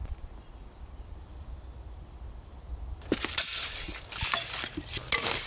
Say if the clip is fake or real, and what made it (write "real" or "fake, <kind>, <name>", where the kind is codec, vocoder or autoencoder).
real